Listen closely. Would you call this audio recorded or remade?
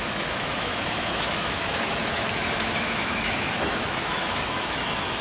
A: remade